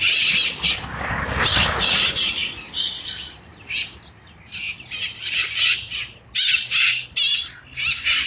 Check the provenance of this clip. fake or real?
real